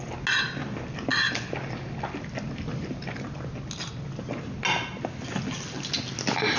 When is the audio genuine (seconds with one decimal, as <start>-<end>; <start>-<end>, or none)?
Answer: 0.0-6.6